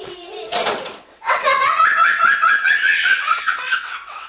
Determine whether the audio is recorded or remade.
remade